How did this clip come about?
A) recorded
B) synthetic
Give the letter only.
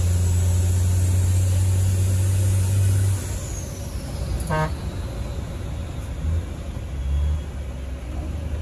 A